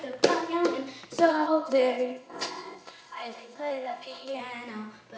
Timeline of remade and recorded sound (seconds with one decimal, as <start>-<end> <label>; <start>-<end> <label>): 0.0-1.3 recorded; 1.3-4.4 remade; 4.4-5.2 recorded

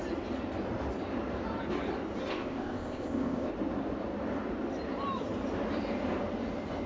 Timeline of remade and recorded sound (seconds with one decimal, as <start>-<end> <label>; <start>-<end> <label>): 0.0-2.3 recorded; 2.3-3.5 remade; 3.5-6.9 recorded

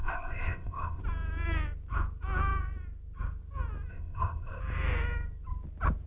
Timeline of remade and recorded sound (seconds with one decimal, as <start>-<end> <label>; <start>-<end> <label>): 0.0-1.0 remade; 1.0-3.9 recorded; 3.9-4.6 remade; 4.6-6.1 recorded